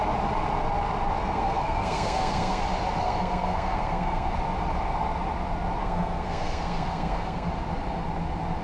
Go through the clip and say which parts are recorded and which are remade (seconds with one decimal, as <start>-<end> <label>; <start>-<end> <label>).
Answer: 0.0-1.2 recorded; 1.2-2.6 remade; 2.6-3.0 recorded; 3.0-4.3 remade; 4.3-5.8 recorded; 5.8-7.5 remade; 7.5-8.6 recorded

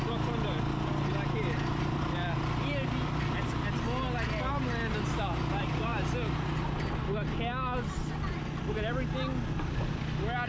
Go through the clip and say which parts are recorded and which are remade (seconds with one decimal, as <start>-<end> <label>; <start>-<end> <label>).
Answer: 0.0-10.5 recorded

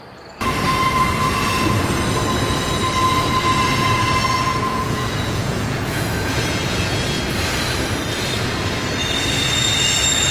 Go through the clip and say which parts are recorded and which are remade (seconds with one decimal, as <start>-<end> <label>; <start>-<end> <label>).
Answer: 0.0-4.5 recorded; 4.5-7.2 remade; 7.2-10.3 recorded

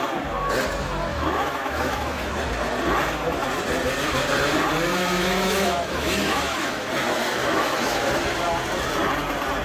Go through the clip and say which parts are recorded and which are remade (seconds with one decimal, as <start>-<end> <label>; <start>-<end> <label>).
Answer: 0.0-1.1 recorded; 1.1-2.3 remade; 2.3-4.9 recorded; 4.9-6.9 remade; 6.9-7.4 recorded; 7.4-8.1 remade; 8.1-9.6 recorded

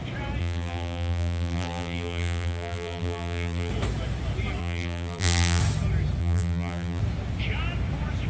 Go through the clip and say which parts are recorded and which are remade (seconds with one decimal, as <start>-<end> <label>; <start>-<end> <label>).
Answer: 0.0-0.4 recorded; 0.4-3.7 remade; 3.7-4.6 recorded; 4.6-5.6 remade; 5.6-6.2 recorded; 6.2-7.0 remade; 7.0-8.3 recorded

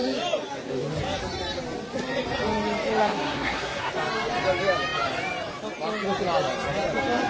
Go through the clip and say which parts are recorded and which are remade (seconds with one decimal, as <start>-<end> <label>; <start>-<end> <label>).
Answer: 0.0-3.0 recorded; 3.0-3.9 remade; 3.9-7.3 recorded

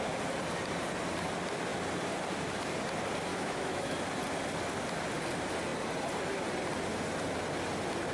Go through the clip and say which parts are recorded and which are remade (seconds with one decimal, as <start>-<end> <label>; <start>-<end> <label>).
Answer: 0.0-3.3 recorded; 3.3-4.0 remade; 4.0-8.1 recorded